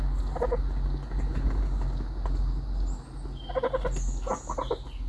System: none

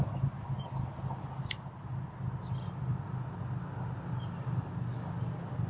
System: none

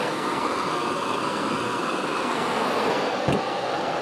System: codec, SNAC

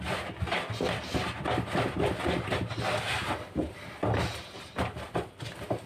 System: none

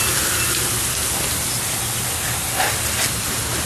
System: none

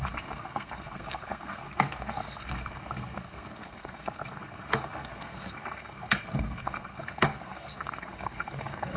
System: codec, SNAC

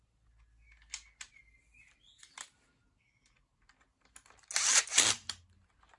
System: none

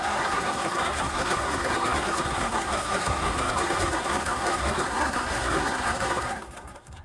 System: codec, SNAC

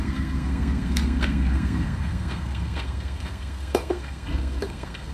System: codec, SNAC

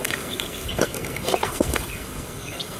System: codec, SNAC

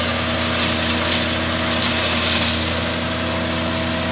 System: none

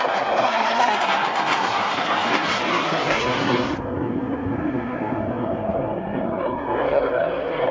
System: codec, SNAC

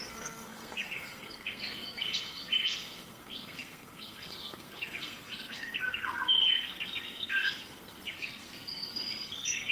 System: codec, SNAC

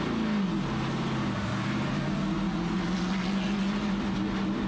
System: none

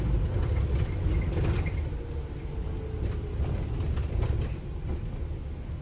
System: none